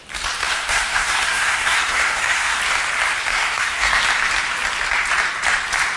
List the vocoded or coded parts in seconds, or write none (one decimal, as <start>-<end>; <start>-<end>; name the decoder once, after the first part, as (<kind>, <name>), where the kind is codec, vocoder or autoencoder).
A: 0.4-2.6 (codec, SNAC); 3.3-4.0